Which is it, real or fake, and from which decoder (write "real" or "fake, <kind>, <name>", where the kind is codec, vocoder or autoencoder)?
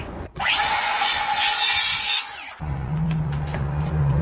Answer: fake, vocoder, Vocos